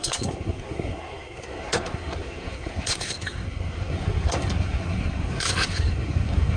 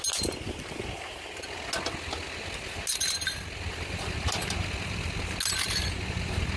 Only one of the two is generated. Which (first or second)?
first